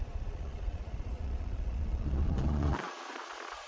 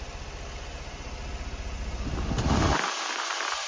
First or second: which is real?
second